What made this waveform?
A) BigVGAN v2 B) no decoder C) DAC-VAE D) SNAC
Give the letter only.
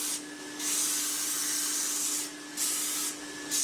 B